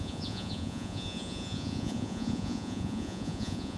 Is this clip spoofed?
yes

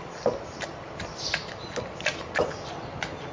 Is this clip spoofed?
no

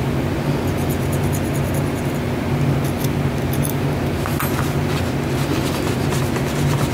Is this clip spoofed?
no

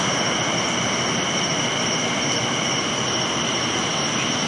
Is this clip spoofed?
no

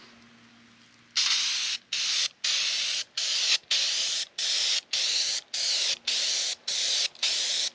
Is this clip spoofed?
no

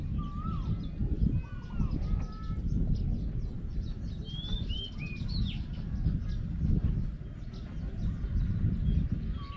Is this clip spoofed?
no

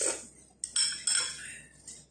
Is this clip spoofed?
no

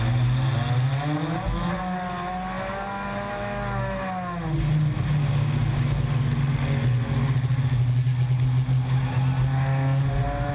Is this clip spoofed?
no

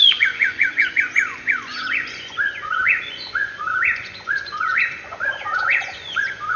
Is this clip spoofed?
yes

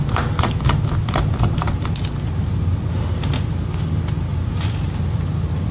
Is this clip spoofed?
no